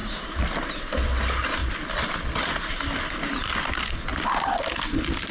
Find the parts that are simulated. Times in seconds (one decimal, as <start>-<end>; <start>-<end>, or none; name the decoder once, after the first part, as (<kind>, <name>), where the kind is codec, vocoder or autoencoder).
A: none